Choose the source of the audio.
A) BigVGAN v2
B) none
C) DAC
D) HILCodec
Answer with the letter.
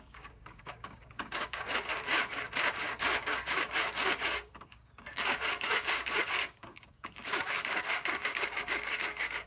C